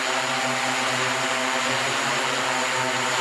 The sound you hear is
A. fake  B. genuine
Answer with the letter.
B